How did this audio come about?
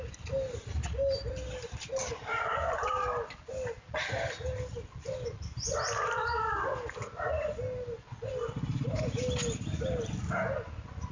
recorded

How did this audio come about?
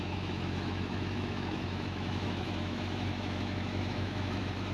remade